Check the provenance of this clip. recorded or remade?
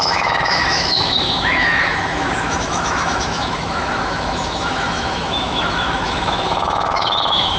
remade